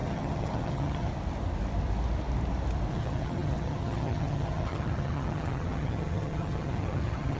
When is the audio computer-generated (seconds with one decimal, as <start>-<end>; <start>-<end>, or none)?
0.0-1.1; 2.9-7.4

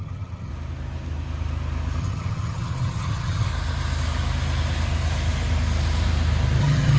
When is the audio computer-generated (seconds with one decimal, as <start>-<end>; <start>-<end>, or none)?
0.0-0.5; 2.0-3.5; 6.6-7.0